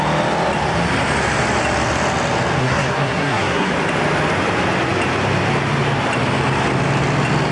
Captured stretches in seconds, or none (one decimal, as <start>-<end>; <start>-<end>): 0.0-2.6; 3.7-7.5